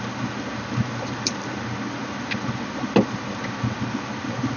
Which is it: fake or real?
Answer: real